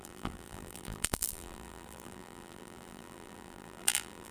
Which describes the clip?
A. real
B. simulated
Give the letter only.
B